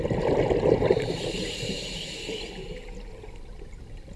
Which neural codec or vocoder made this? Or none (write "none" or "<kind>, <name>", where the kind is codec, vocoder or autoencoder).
none